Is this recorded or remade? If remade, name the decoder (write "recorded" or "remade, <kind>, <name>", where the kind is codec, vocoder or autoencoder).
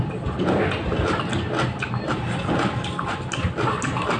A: recorded